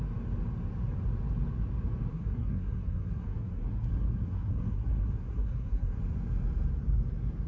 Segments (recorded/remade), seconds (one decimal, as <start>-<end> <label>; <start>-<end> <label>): 0.0-2.1 recorded; 2.1-6.0 remade; 6.0-7.5 recorded